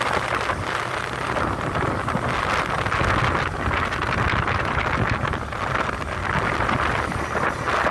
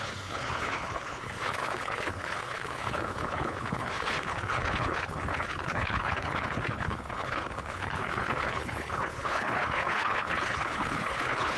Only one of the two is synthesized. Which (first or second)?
second